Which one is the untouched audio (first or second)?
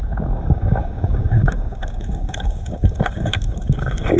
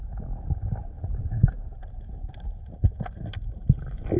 second